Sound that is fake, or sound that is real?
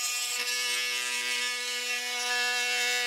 real